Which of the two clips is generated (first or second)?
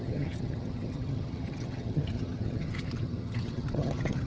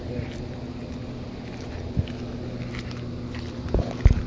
first